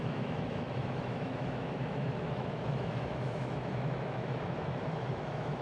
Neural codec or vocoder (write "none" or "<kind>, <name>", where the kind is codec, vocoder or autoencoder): autoencoder, DAC-VAE